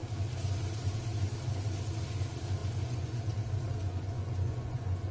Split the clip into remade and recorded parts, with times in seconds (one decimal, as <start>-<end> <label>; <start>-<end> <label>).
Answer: 0.0-2.6 recorded; 2.6-3.2 remade; 3.2-3.8 recorded; 3.8-5.1 remade